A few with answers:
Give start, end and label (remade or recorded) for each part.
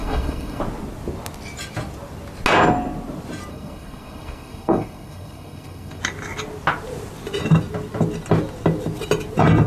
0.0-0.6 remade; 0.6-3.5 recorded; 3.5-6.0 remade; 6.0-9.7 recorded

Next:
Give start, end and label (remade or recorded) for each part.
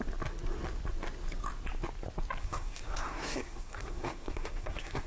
0.0-2.4 recorded; 2.4-5.1 remade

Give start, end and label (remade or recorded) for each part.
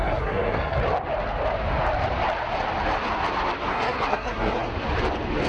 0.0-0.8 remade; 0.8-3.7 recorded; 3.7-4.7 remade; 4.7-5.5 recorded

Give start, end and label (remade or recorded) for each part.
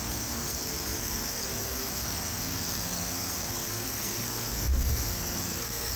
0.0-6.0 remade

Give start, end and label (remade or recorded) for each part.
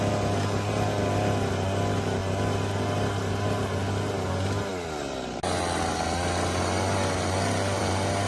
0.0-8.3 recorded